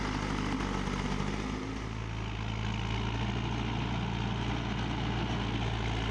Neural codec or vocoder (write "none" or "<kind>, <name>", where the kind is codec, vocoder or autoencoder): none